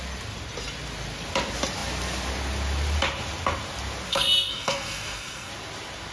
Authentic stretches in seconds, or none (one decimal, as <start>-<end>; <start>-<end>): 0.0-4.1; 5.5-6.1